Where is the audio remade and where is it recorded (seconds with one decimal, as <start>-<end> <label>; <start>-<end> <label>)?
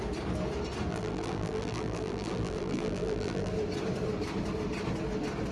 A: 0.0-0.9 recorded; 0.9-3.5 remade; 3.5-5.5 recorded